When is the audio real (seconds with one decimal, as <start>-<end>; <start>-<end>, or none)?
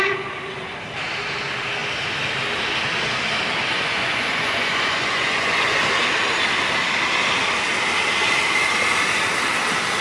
0.0-3.7; 5.8-10.0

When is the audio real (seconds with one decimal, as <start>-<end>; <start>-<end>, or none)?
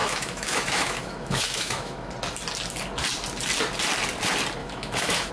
2.1-4.6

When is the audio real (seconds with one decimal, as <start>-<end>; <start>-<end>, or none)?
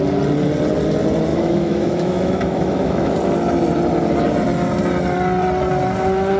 0.0-1.3; 3.1-6.4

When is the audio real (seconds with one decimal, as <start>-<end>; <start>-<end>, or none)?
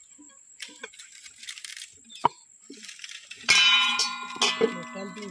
4.0-5.3